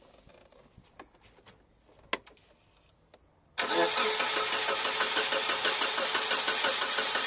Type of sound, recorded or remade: recorded